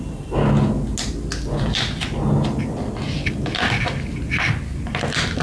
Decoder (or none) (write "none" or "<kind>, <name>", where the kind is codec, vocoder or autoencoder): none